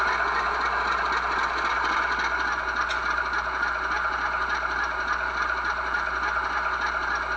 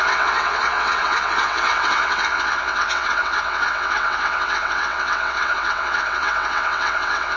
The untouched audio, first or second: first